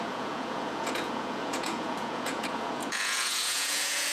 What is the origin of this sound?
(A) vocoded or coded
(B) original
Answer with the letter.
A